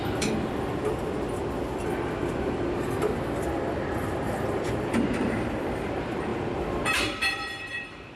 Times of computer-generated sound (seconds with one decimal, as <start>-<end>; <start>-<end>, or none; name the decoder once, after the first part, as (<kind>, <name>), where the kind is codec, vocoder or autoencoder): 0.0-0.7 (vocoder, BigVGAN v2); 3.7-8.2